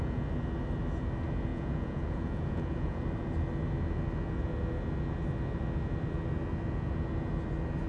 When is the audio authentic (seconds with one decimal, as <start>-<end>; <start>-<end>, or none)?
0.0-1.5; 3.0-7.9